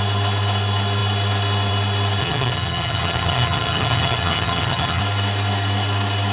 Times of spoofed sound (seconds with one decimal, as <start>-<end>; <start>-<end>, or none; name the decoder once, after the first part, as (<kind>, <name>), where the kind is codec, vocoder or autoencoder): 2.2-5.0 (vocoder, HiFi-GAN)